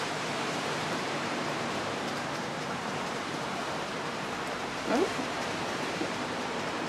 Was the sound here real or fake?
fake